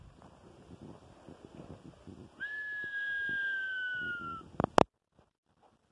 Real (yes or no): yes